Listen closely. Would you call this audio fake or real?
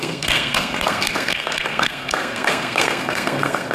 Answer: fake